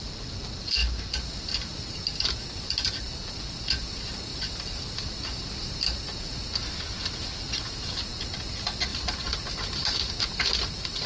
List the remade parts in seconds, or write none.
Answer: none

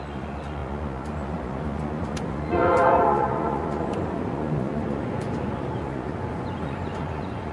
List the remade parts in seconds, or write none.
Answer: 0.0-7.5

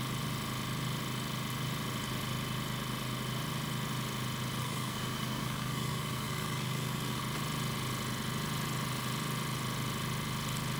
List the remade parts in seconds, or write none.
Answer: 4.6-7.2

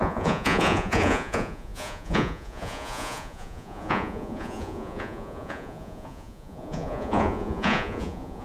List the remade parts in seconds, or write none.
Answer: 0.0-8.4

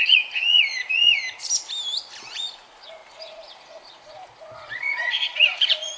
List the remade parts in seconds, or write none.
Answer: 0.0-1.2; 2.2-6.0

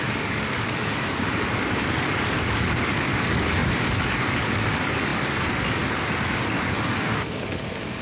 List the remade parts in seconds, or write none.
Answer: 0.0-8.0

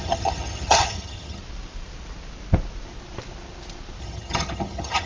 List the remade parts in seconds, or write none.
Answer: 0.0-1.4; 4.0-5.1

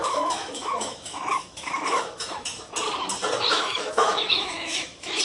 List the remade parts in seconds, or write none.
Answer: 0.0-2.7; 3.5-5.2